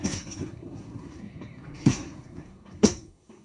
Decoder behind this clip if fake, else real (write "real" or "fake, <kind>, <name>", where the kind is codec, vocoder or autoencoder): fake, codec, SNAC